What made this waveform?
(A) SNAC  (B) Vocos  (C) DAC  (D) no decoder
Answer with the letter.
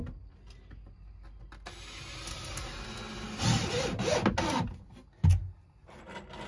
D